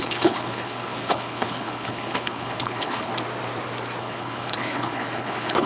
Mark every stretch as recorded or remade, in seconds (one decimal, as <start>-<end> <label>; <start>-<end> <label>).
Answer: 0.0-3.1 remade; 3.1-4.0 recorded; 4.0-5.7 remade